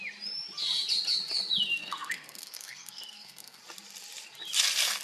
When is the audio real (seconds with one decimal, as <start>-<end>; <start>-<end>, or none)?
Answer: 0.0-1.8; 3.6-5.0